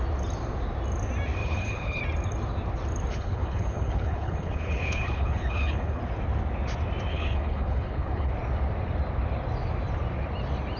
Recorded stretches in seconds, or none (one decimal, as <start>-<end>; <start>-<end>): 0.0-1.4; 2.0-3.1; 6.0-7.1; 8.3-10.8